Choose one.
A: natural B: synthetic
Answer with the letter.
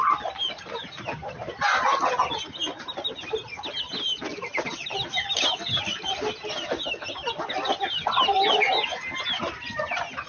A